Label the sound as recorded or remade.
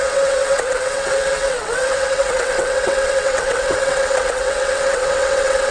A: remade